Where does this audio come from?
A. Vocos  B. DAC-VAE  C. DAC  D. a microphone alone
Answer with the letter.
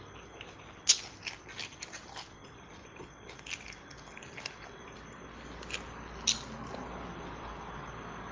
D